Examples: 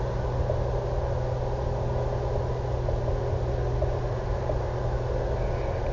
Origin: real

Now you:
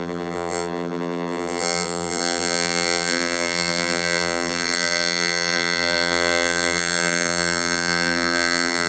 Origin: fake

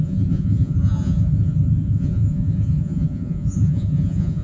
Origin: fake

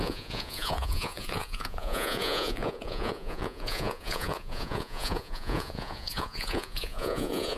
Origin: fake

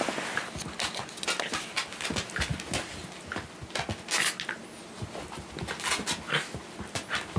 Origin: real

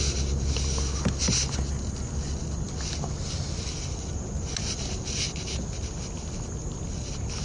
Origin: real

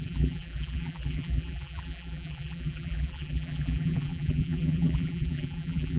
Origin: fake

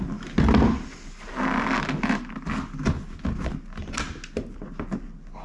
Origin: real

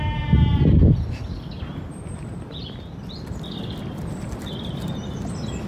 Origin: real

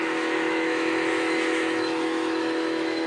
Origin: fake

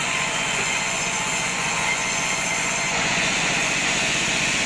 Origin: fake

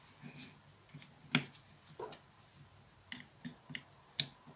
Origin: real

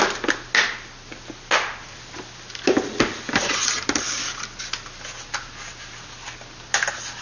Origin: real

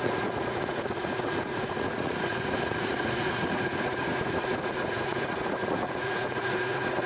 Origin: fake